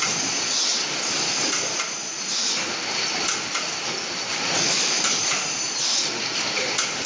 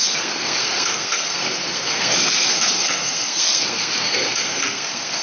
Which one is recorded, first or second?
first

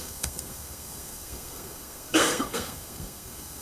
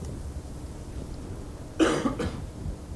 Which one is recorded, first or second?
second